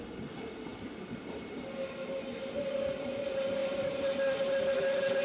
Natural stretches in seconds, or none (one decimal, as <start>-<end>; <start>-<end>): 0.0-5.2

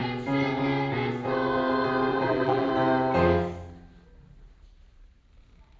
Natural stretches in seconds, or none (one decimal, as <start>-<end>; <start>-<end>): 0.0-2.1; 2.7-5.8

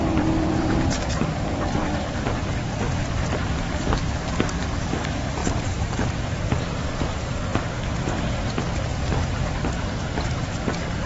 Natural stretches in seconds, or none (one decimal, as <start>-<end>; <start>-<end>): 7.5-8.2; 8.9-10.2

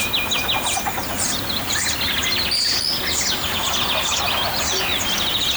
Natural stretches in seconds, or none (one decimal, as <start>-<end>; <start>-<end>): 0.0-1.0; 4.2-5.6

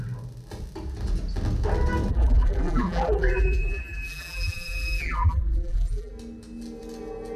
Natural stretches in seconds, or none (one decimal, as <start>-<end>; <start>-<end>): 0.0-2.1; 6.1-7.4